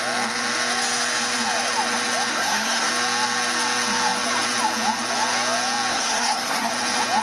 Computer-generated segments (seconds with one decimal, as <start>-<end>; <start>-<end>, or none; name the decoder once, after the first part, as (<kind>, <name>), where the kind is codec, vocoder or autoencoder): 2.3-2.9 (codec, SNAC); 5.9-6.7